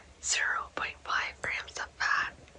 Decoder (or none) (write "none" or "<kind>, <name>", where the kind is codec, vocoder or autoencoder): none